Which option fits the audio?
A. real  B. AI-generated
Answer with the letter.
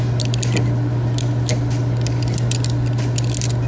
A